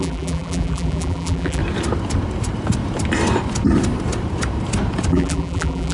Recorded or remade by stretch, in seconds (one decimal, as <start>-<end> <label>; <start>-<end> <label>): 0.0-1.6 remade; 1.6-5.1 recorded; 5.1-5.9 remade